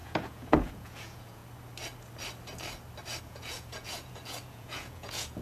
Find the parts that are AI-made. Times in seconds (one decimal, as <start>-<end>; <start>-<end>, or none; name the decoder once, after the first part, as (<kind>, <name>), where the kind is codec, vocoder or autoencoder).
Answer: 0.0-1.4 (vocoder, Vocos); 3.2-5.4